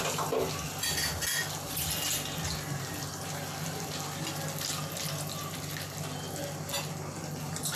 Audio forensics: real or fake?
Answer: real